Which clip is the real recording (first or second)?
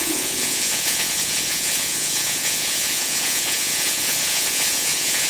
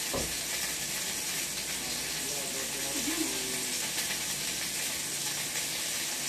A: second